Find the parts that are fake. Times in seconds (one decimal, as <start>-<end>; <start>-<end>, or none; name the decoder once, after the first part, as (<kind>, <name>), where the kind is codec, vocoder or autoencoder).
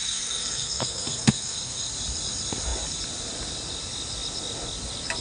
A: 0.0-1.9 (codec, SNAC)